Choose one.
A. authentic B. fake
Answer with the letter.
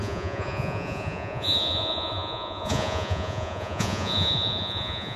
B